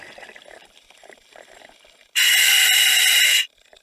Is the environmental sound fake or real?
real